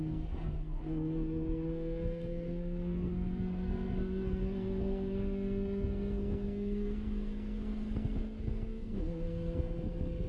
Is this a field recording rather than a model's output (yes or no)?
no